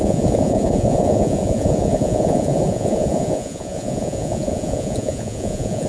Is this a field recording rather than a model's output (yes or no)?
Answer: no